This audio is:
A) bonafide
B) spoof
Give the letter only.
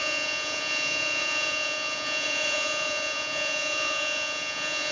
B